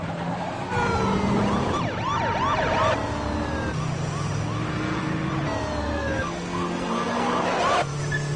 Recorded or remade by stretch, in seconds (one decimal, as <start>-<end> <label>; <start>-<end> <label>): 0.0-4.7 recorded; 4.7-5.3 remade; 5.3-5.8 recorded; 5.8-7.6 remade; 7.6-8.4 recorded